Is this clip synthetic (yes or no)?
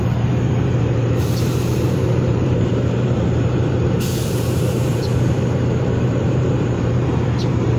yes